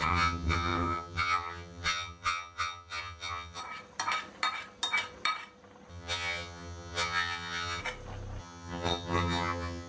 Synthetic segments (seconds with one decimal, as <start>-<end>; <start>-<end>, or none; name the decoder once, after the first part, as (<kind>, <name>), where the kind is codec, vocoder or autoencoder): 0.0-3.6 (vocoder, HiFi-GAN); 5.9-7.8; 8.4-9.9